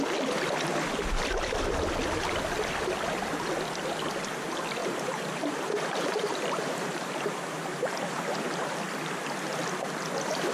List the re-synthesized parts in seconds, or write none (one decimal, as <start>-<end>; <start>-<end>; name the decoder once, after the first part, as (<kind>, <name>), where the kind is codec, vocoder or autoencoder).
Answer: 4.8-8.8 (vocoder, BigVGAN v2)